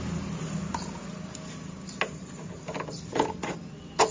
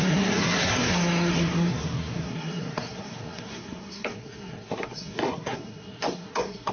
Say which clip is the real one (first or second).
first